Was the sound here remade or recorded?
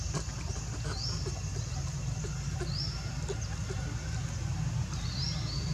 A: recorded